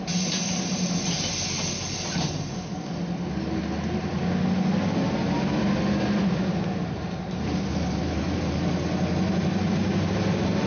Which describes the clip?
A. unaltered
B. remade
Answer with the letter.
A